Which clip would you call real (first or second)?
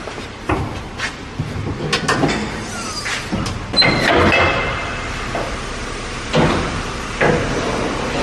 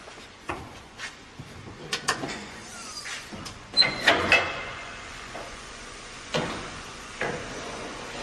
first